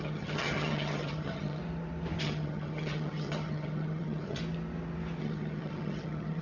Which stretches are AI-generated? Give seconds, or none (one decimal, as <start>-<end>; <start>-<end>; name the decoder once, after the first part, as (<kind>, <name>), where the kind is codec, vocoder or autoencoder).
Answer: 0.0-1.6 (vocoder, HiFi-GAN); 2.2-4.4; 5.2-6.4